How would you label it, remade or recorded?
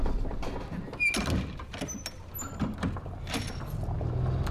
recorded